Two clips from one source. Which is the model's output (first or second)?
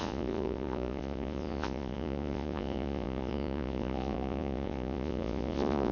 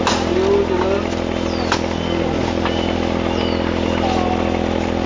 first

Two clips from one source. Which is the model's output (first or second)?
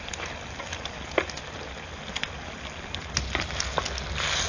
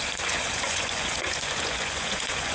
second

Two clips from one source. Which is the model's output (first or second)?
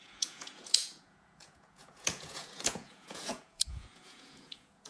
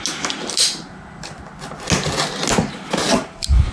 first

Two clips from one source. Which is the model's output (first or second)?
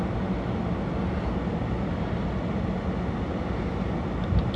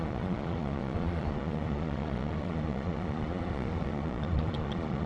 second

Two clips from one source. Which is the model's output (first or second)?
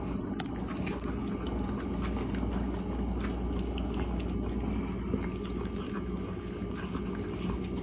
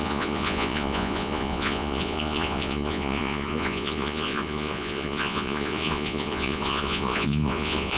second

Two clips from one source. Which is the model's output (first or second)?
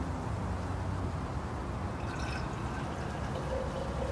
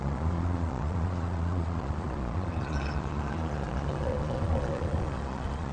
second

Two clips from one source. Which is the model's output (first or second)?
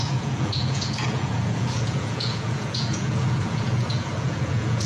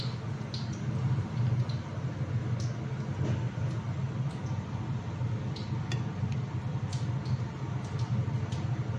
first